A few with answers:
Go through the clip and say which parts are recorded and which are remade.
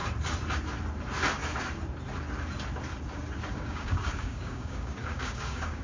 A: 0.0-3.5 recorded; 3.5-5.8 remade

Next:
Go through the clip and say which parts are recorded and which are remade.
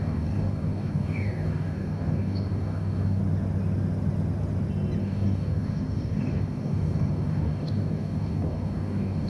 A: 0.0-3.2 remade; 3.2-5.0 recorded; 5.0-9.3 remade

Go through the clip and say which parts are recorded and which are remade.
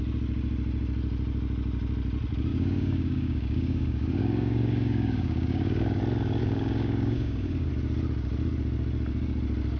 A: 0.0-2.5 recorded; 2.5-6.0 remade; 6.0-6.4 recorded; 6.4-7.7 remade; 7.7-9.8 recorded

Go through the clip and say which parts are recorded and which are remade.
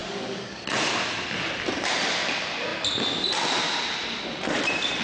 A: 0.0-0.6 remade; 0.6-5.0 recorded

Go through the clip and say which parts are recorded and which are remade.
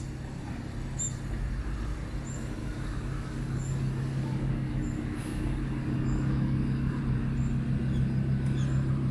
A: 0.0-2.6 recorded; 2.6-7.0 remade; 7.0-9.1 recorded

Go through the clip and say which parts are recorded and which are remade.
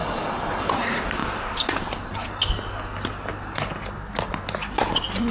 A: 0.0-0.7 remade; 0.7-5.3 recorded